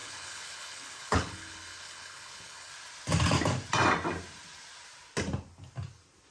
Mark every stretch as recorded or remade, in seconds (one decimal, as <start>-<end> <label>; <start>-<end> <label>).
0.0-2.7 remade; 2.7-6.3 recorded